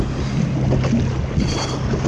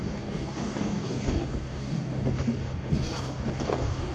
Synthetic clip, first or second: second